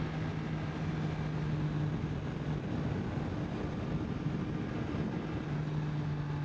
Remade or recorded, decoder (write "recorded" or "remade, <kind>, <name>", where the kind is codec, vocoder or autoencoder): recorded